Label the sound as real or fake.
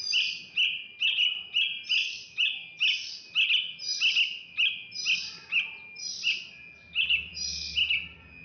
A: real